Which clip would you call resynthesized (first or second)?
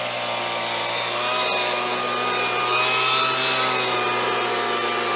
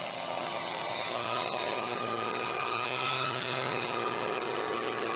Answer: second